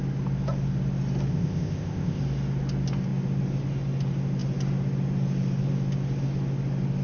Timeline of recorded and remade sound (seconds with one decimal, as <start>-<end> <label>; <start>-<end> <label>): 0.0-1.3 recorded; 1.3-2.2 remade; 2.2-7.0 recorded